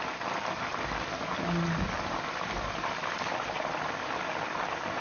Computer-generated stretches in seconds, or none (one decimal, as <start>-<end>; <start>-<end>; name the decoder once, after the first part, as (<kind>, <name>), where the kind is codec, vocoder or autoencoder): none